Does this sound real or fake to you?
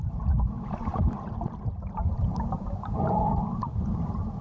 fake